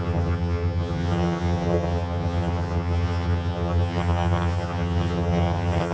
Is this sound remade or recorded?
remade